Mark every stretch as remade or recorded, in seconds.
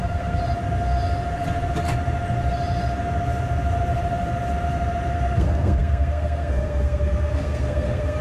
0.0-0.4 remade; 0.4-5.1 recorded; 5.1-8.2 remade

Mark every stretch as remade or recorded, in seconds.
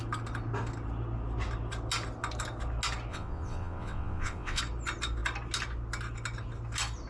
0.0-3.1 recorded; 3.1-4.6 remade; 4.6-7.1 recorded